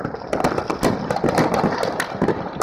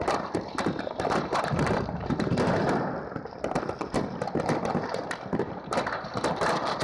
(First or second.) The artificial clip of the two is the second